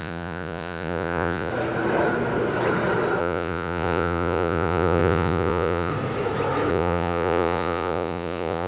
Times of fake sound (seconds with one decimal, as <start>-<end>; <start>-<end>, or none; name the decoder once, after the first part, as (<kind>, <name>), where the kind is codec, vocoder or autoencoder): 0.0-1.5 (vocoder, Vocos); 3.2-5.9; 6.7-8.7